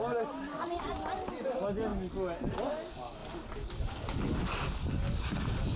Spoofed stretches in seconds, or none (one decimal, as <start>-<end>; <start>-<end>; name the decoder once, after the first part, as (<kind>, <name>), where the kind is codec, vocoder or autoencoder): none